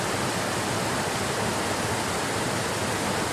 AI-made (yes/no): no